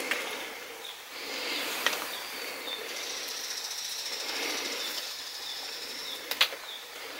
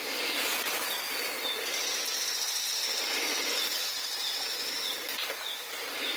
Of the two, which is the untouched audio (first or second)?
second